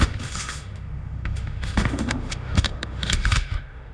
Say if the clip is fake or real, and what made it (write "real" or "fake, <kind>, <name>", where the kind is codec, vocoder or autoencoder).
fake, autoencoder, DAC-VAE